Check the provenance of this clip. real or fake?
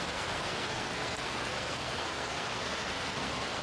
fake